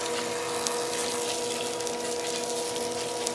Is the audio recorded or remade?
recorded